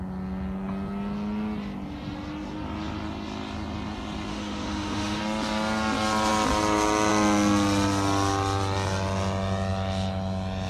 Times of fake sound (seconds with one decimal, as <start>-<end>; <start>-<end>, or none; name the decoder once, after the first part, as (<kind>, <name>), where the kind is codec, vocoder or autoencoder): 4.3-5.2 (autoencoder, DAC-VAE)